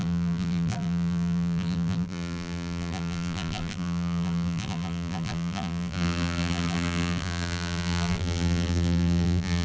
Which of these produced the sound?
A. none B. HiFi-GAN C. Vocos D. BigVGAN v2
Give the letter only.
D